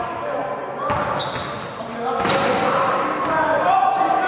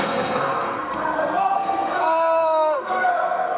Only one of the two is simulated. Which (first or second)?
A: second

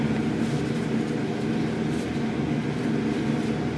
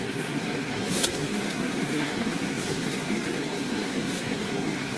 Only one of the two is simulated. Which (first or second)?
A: second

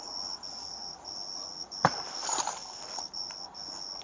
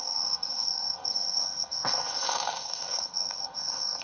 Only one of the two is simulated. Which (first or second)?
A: second